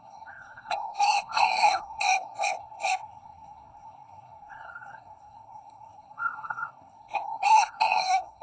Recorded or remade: remade